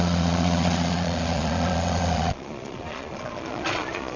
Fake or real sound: fake